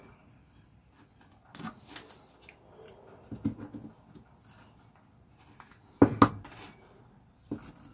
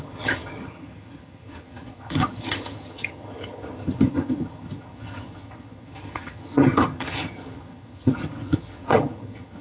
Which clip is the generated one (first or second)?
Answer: second